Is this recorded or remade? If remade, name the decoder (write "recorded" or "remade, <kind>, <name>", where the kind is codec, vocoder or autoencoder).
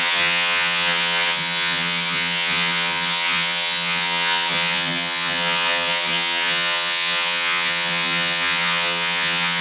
remade, vocoder, HiFi-GAN